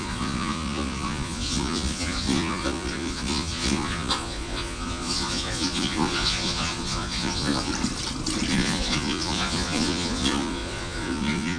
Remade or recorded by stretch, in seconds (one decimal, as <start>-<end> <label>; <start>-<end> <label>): 0.0-7.7 remade; 7.7-8.5 recorded; 8.5-11.6 remade